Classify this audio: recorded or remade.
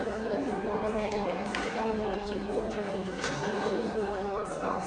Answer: remade